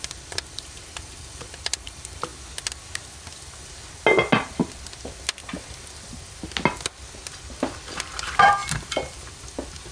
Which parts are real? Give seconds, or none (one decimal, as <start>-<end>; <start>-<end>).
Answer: 2.3-7.5